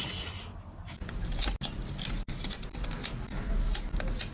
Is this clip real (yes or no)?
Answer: yes